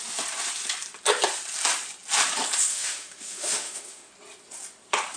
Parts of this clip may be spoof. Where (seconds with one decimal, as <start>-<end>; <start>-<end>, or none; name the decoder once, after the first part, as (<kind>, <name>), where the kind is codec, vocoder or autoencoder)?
2.7-4.1 (autoencoder, DAC-VAE)